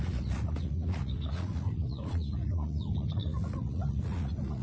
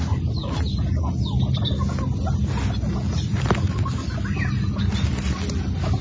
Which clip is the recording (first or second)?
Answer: second